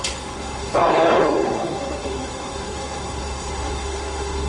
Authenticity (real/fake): fake